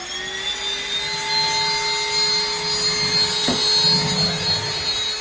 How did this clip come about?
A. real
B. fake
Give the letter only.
A